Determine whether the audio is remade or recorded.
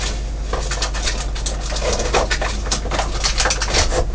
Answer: recorded